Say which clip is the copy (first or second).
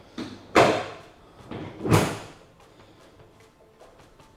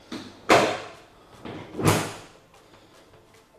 first